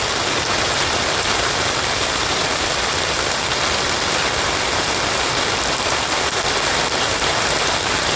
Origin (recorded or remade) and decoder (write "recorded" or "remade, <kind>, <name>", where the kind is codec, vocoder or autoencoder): remade, vocoder, BigVGAN v2